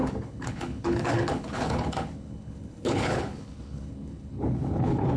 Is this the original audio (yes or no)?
no